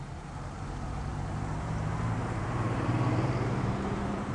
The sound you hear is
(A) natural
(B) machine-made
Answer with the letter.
B